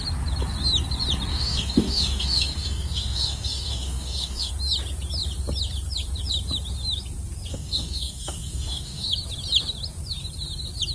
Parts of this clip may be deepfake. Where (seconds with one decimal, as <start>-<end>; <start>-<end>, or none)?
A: 1.3-4.5; 7.5-9.1

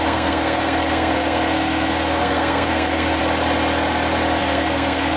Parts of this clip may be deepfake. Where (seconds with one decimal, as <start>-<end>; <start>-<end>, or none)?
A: 0.0-3.2; 4.4-5.2

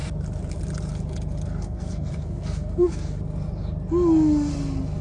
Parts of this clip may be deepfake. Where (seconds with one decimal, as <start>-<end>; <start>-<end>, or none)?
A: 1.5-3.2